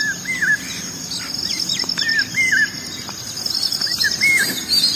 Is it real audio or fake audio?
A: real